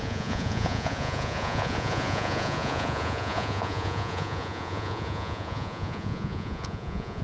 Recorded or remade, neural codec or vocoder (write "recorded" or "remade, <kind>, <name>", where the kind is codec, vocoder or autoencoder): remade, vocoder, Vocos